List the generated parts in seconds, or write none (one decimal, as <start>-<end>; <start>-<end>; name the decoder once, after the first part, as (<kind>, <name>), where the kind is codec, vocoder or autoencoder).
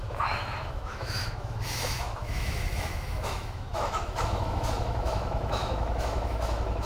0.0-6.9 (autoencoder, DAC-VAE)